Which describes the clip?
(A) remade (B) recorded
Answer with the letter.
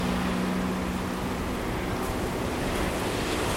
B